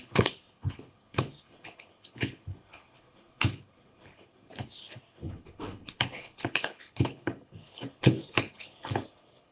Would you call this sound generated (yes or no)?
yes